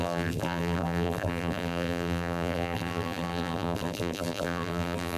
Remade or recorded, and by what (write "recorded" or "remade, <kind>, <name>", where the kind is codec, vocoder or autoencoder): remade, vocoder, BigVGAN v2